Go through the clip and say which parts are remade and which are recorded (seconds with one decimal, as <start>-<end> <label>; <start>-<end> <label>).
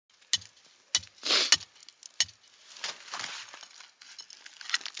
0.0-5.0 recorded